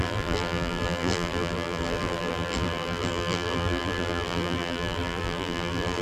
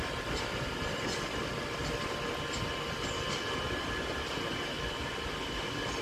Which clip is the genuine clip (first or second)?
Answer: second